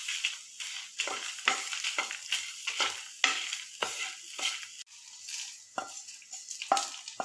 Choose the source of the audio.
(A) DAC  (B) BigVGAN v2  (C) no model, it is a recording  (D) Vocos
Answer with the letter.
C